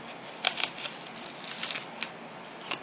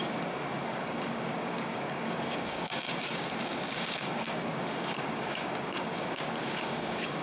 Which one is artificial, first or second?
second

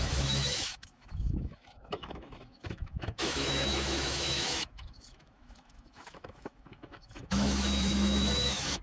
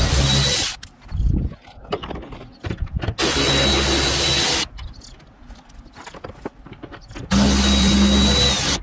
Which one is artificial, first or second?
first